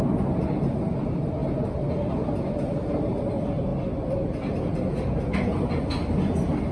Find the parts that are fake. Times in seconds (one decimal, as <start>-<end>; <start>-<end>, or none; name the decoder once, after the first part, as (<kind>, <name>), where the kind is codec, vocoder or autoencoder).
none